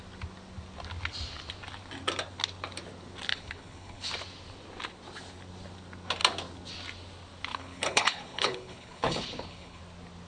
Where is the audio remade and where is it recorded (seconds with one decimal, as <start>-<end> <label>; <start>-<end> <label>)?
0.0-3.3 recorded; 3.3-4.1 remade; 4.1-7.5 recorded; 7.5-9.8 remade; 9.8-10.3 recorded